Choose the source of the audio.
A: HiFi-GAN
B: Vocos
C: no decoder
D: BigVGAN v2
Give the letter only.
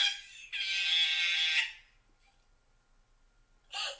C